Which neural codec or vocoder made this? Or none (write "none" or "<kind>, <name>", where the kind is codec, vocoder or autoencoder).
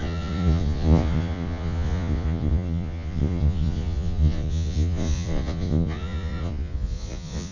vocoder, Vocos